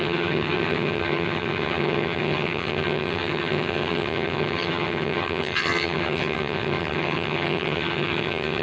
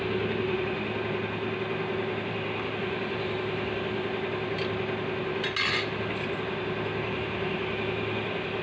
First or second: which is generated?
first